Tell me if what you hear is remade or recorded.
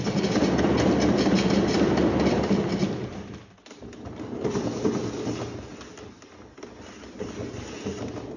recorded